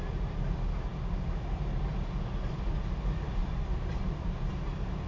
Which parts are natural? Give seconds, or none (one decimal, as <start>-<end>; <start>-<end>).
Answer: 0.0-3.4; 4.3-5.1